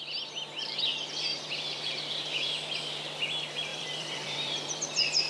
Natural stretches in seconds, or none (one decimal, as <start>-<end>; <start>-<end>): 0.0-0.9; 2.9-3.7